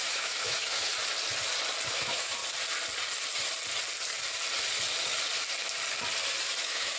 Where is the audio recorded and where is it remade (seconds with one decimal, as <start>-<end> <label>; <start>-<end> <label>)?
0.0-0.9 remade; 0.9-1.9 recorded; 1.9-2.4 remade; 2.4-6.6 recorded; 6.6-7.0 remade